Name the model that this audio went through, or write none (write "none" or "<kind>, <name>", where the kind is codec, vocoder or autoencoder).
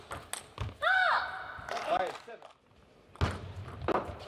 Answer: none